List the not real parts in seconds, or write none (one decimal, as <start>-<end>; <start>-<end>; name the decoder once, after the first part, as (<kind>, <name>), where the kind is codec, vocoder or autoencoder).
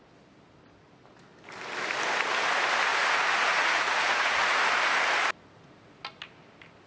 2.9-4.6 (vocoder, Vocos)